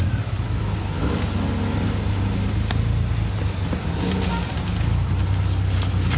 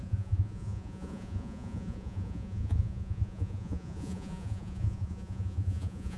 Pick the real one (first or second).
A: first